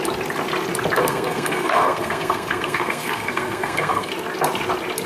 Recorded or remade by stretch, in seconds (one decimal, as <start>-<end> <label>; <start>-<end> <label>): 0.0-1.0 recorded; 1.0-4.1 remade; 4.1-5.1 recorded